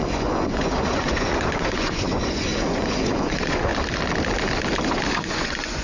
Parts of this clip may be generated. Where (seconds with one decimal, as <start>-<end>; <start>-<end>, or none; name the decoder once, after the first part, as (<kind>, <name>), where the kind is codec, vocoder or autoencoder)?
0.0-3.7 (vocoder, Vocos); 5.1-5.8